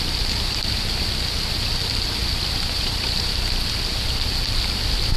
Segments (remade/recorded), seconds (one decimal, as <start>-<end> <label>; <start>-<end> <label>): 0.0-2.2 recorded; 2.2-3.3 remade; 3.3-5.2 recorded